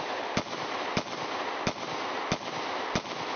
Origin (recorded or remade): recorded